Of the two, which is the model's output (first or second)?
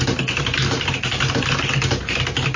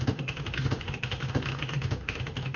second